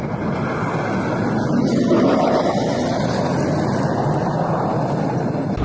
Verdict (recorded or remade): recorded